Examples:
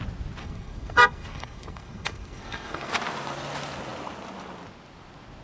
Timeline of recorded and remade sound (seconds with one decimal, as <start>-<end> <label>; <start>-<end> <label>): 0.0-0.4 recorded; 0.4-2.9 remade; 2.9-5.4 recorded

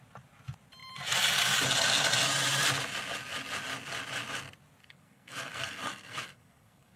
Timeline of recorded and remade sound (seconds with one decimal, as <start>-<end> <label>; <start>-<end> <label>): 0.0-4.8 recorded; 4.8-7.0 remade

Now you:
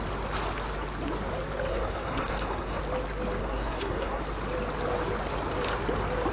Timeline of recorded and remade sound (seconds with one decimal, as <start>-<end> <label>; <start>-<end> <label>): 0.0-1.7 recorded; 1.7-2.8 remade; 2.8-3.4 recorded; 3.4-4.2 remade; 4.2-6.3 recorded

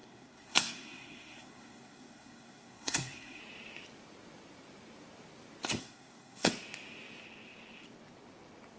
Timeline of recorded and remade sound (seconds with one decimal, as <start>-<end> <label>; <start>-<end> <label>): 0.0-3.4 remade; 3.4-5.8 recorded; 5.8-6.5 remade; 6.5-8.8 recorded